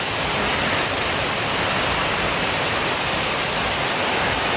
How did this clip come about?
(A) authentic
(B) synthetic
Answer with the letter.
A